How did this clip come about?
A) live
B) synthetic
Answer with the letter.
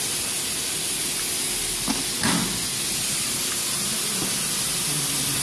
A